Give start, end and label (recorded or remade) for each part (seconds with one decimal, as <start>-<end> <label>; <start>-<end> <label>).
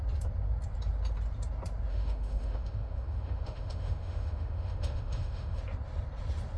0.0-1.9 recorded; 1.9-5.6 remade; 5.6-6.6 recorded